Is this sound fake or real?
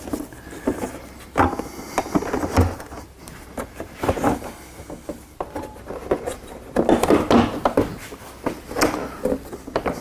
real